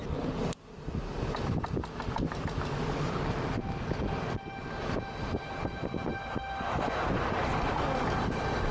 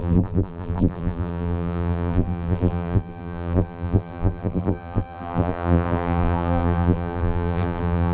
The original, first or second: first